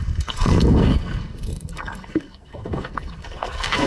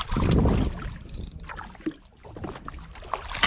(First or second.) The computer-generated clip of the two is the first